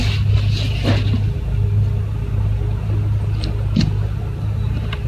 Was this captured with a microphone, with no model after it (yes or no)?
yes